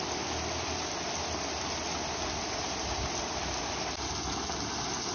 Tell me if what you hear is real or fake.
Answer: fake